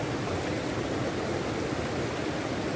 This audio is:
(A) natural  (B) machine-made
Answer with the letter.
A